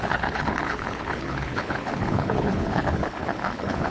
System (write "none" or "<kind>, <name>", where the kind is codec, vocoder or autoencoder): codec, HILCodec